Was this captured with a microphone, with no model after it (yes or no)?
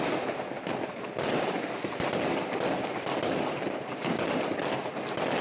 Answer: yes